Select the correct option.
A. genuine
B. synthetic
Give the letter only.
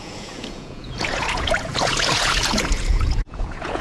B